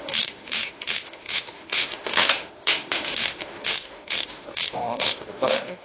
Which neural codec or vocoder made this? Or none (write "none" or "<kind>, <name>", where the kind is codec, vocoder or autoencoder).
autoencoder, DAC-VAE